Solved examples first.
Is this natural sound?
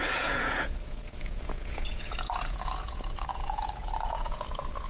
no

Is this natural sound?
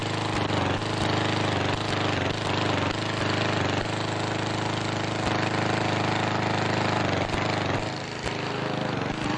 yes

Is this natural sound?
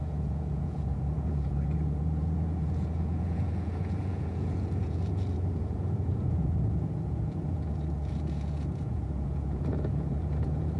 no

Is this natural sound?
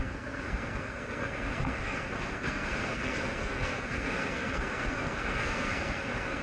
no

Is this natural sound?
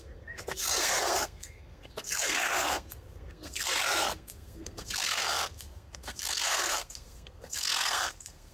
no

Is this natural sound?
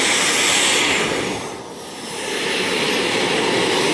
yes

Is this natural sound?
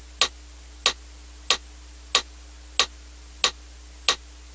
yes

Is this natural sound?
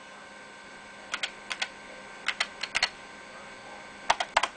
yes